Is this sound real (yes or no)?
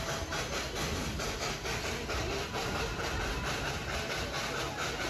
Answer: yes